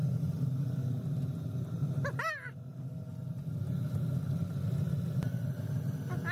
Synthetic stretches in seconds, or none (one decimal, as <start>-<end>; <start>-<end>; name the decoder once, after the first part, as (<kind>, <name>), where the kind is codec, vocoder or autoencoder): none